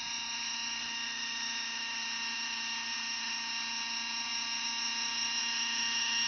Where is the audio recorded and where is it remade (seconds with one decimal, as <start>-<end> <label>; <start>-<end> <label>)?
0.0-6.3 recorded